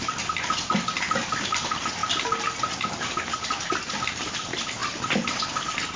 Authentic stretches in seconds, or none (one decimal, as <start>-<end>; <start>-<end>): 0.0-6.0